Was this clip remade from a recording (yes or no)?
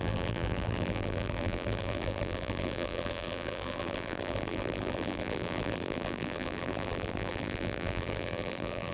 yes